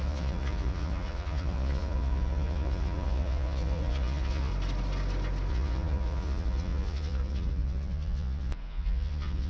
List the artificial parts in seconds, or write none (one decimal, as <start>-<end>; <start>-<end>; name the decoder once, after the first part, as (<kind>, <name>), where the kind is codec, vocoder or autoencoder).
0.0-4.5 (vocoder, Vocos); 5.5-9.5